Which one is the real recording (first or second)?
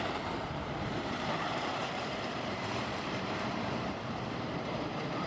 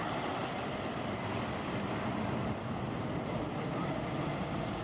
second